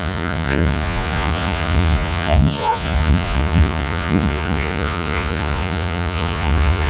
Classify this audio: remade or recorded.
remade